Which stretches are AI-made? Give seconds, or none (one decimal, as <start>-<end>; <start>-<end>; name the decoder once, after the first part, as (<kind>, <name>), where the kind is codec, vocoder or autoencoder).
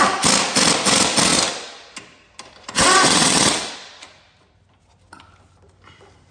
2.8-3.7 (vocoder, WaveNeXt)